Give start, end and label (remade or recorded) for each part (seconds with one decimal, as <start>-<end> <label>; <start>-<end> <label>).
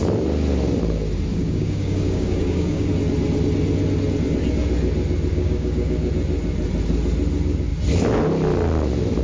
0.0-1.3 recorded; 1.3-2.9 remade; 2.9-5.3 recorded; 5.3-6.1 remade; 6.1-9.2 recorded